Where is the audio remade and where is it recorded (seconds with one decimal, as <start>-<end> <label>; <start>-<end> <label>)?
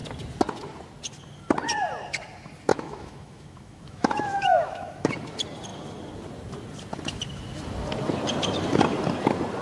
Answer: 0.0-2.7 recorded; 2.7-5.1 remade; 5.1-9.6 recorded